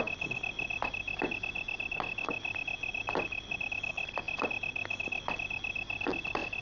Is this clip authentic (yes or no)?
yes